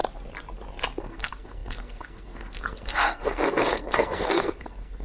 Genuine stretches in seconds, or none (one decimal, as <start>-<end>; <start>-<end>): 0.0-1.0